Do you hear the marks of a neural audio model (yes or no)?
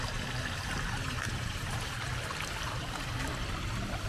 yes